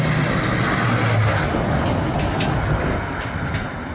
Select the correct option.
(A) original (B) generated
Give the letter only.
A